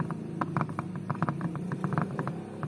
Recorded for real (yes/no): yes